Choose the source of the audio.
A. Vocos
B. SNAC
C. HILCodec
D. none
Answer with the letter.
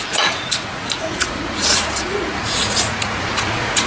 A